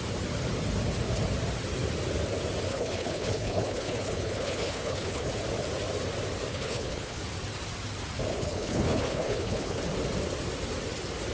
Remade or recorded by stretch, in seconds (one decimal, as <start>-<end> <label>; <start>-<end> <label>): 0.0-2.7 recorded; 2.7-5.3 remade; 5.3-6.5 recorded; 6.5-7.2 remade; 7.2-8.3 recorded; 8.3-9.8 remade; 9.8-11.3 recorded